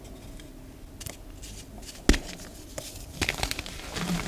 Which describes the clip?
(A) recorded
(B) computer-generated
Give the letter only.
A